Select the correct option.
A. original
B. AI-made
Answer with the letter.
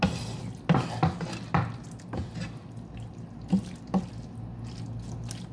A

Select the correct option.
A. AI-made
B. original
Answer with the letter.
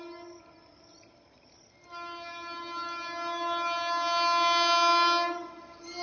B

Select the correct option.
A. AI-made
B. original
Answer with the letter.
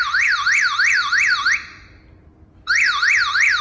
B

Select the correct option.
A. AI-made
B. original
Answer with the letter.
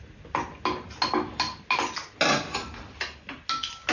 B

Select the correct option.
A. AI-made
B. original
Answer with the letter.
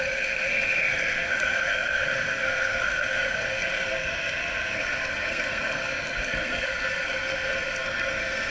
A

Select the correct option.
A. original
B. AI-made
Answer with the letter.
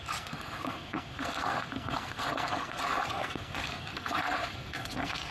B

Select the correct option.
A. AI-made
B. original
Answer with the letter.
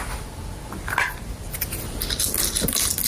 B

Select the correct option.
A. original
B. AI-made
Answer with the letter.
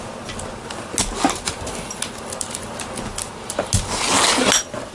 A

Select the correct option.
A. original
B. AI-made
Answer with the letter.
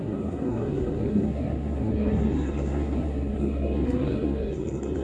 B